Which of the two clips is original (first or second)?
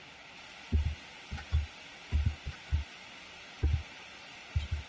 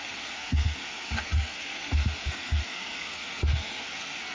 first